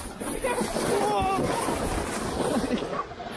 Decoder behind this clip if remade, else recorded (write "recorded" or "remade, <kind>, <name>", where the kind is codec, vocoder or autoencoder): recorded